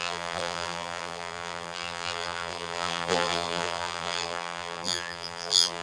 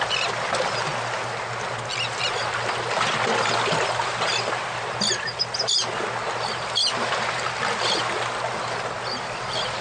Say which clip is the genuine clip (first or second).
second